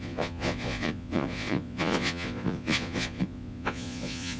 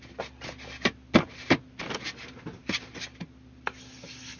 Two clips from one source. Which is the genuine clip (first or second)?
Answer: second